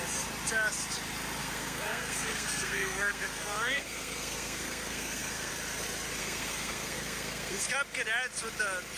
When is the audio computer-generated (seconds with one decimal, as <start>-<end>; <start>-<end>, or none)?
1.4-5.5; 6.2-7.7